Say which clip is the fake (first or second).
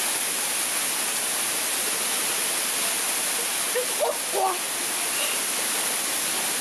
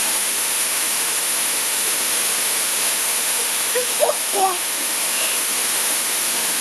second